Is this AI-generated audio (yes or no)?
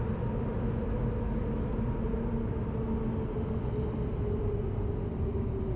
no